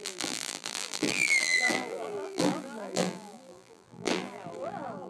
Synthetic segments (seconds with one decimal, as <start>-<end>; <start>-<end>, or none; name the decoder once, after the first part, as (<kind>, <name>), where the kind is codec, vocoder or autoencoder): 0.0-5.1 (vocoder, BigVGAN v2)